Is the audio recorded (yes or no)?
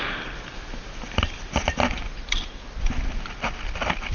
yes